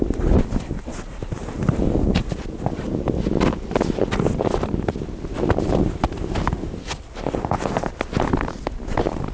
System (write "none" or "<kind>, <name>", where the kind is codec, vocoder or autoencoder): none